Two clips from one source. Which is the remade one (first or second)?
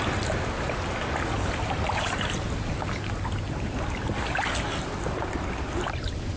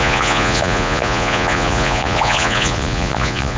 second